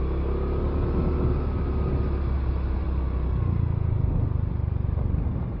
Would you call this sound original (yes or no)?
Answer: yes